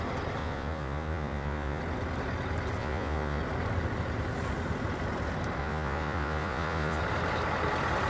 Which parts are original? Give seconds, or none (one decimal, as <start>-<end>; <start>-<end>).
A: 0.0-0.4; 1.8-2.8; 3.4-5.6; 7.0-8.1